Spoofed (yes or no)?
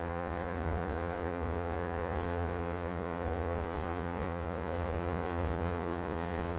yes